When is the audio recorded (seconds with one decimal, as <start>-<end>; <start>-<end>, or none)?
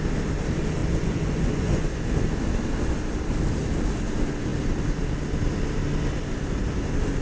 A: 0.0-0.8; 2.0-7.2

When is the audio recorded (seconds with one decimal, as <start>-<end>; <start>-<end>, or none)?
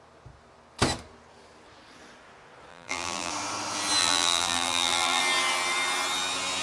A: 0.0-2.7; 3.3-4.0; 5.2-6.6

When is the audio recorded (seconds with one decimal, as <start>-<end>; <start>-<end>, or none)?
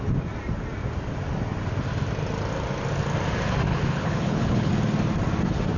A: 0.0-3.7; 4.7-5.8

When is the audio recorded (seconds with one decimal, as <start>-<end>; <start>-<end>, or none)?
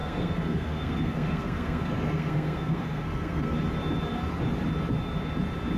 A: 3.5-5.8